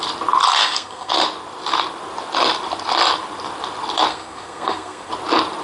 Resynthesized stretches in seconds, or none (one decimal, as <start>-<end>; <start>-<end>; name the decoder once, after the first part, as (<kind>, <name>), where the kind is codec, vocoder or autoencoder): 0.6-1.1 (codec, SNAC); 4.1-5.1